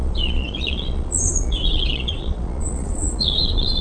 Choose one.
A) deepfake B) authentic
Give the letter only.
A